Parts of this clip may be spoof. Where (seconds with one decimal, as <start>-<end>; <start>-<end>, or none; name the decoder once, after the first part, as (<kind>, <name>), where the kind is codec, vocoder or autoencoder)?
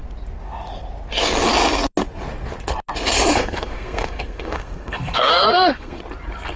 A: 3.3-6.0 (codec, SNAC)